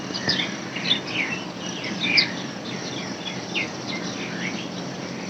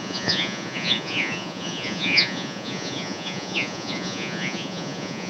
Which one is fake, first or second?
second